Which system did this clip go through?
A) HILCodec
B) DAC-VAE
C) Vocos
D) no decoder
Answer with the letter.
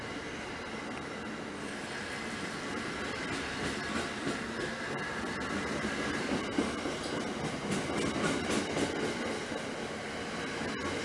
D